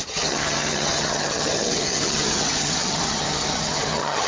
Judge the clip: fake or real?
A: fake